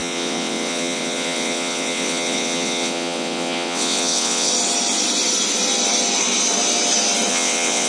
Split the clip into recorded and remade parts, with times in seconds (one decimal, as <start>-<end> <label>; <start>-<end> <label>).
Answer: 0.0-4.5 remade; 4.5-7.3 recorded; 7.3-7.9 remade